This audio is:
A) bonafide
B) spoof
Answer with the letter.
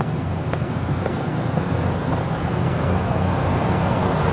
B